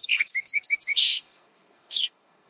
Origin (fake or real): fake